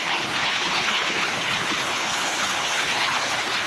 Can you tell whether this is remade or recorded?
remade